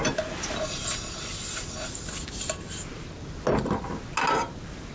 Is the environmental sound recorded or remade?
recorded